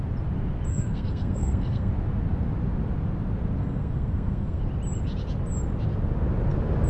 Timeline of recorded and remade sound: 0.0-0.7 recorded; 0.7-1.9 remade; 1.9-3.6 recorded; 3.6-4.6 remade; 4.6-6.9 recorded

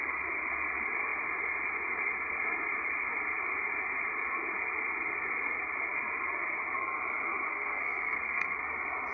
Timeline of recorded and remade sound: 0.0-7.5 recorded; 7.5-8.6 remade; 8.6-9.1 recorded